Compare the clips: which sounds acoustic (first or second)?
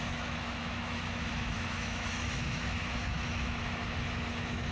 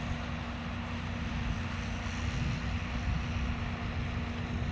second